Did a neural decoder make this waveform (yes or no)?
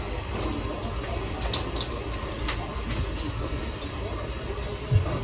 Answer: no